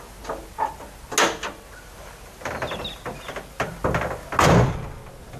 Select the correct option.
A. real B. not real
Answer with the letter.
A